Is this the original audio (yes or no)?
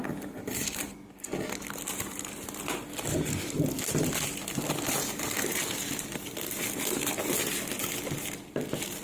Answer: yes